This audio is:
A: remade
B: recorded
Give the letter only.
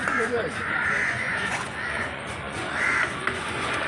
A